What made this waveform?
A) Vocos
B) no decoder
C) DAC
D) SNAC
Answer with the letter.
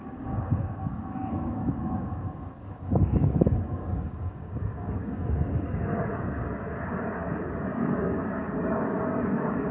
C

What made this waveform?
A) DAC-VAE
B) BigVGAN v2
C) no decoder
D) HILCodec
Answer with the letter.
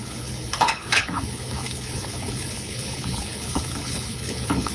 D